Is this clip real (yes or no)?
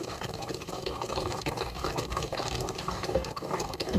no